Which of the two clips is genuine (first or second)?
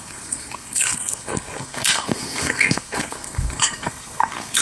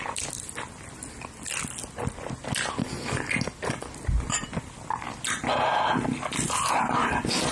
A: second